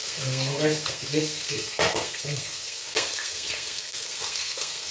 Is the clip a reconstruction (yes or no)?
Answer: yes